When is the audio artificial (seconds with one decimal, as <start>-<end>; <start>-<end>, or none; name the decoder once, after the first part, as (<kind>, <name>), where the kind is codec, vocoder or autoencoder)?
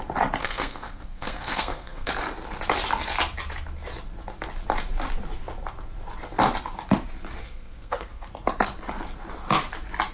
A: 0.4-2.1 (codec, SNAC); 7.4-8.3